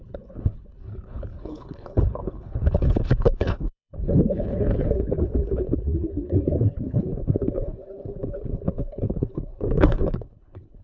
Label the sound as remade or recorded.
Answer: remade